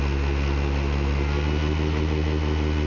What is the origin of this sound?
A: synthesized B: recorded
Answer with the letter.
B